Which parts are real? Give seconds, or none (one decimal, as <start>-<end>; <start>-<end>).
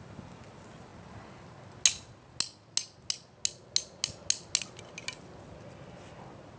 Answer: 0.0-6.6